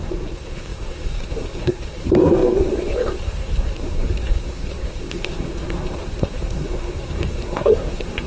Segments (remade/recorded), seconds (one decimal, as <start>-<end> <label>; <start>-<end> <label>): 0.0-8.3 remade